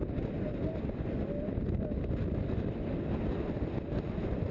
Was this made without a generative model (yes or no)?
yes